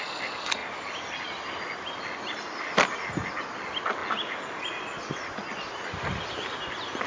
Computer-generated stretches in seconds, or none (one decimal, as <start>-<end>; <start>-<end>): none